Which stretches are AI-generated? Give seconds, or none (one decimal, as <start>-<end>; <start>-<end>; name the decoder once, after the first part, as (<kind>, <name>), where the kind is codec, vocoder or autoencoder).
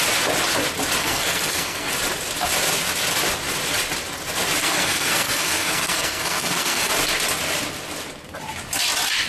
1.0-1.9 (codec, SNAC); 4.6-6.9